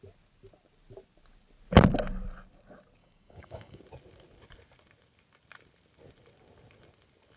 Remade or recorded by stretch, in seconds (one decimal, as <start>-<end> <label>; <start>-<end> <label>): 0.0-3.0 recorded; 3.0-3.8 remade; 3.8-7.4 recorded